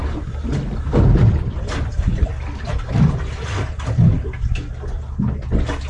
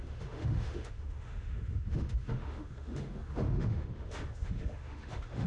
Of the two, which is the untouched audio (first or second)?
first